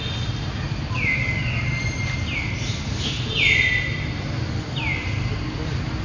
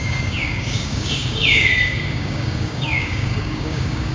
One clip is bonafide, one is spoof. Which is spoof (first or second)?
second